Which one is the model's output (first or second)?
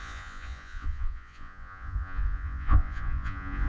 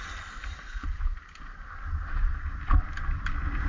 first